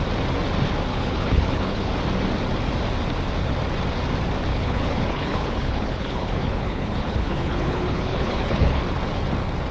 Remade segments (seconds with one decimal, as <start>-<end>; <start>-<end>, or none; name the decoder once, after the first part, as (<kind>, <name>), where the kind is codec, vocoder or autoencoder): 0.9-1.9 (codec, HILCodec); 4.5-8.8